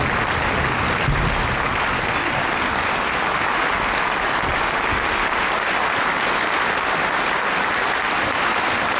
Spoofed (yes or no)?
no